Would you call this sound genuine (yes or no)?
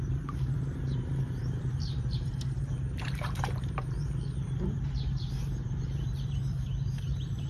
no